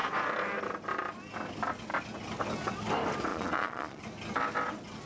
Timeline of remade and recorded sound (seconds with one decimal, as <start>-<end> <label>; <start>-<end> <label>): 0.0-3.3 recorded; 3.3-4.0 remade; 4.0-5.1 recorded